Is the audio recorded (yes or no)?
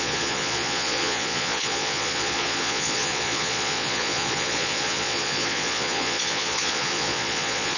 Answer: no